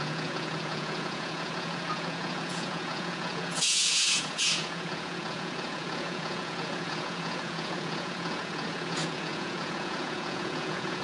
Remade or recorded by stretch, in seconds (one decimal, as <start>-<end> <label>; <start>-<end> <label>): 0.0-11.0 remade